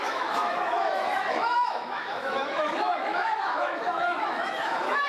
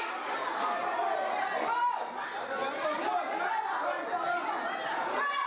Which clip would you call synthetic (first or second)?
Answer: first